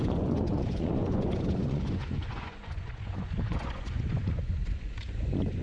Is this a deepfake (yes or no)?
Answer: yes